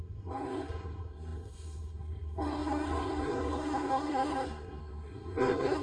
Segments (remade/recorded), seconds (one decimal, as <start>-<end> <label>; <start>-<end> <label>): 0.0-5.8 remade